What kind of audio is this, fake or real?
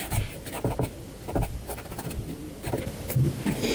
real